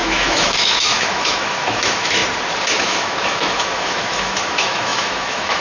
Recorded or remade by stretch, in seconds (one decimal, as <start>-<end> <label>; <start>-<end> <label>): 0.0-2.2 remade; 2.2-2.8 recorded; 2.8-5.6 remade